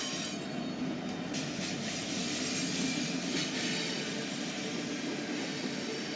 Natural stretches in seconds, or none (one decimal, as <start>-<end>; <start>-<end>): 0.0-6.2